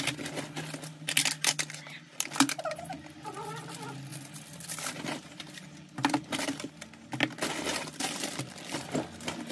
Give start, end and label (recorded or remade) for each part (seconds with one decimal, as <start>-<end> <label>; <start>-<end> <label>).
0.0-9.5 recorded